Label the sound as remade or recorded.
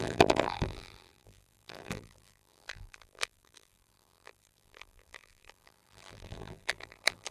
remade